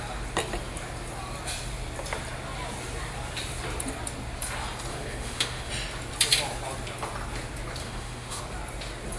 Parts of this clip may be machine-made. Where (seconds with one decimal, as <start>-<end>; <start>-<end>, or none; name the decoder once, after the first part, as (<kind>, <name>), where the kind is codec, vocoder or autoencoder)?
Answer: 4.9-5.7 (autoencoder, DAC-VAE); 7.8-8.4